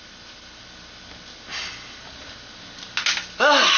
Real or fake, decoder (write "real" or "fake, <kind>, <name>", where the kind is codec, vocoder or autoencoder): real